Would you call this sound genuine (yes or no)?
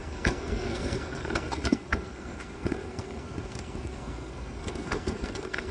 no